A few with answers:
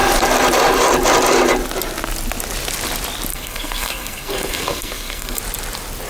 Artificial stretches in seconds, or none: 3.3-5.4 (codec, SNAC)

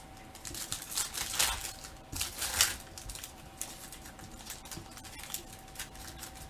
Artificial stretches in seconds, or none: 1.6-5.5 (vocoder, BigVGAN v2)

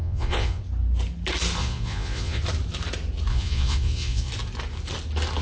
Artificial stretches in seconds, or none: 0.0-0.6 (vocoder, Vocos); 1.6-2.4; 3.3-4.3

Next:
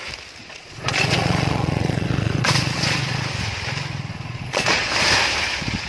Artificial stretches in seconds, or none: 0.4-3.2 (vocoder, Vocos); 4.1-4.9